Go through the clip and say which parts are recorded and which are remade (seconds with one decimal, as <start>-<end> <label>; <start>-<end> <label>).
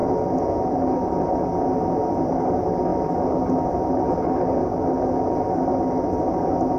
0.0-6.8 recorded